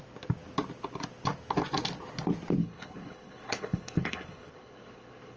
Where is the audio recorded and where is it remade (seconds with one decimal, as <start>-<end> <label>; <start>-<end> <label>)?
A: 0.0-2.6 recorded; 2.6-5.4 remade